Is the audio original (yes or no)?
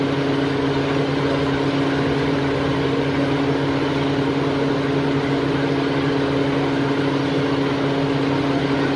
yes